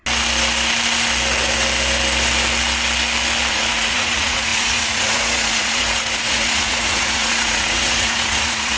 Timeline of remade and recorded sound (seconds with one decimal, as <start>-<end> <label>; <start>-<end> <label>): 0.0-3.5 recorded; 3.5-8.8 remade